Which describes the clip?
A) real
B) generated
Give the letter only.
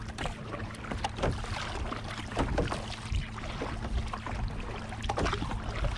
A